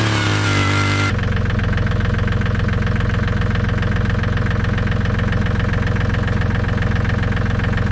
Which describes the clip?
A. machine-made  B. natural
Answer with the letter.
B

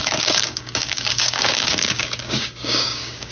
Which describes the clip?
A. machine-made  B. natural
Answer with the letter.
A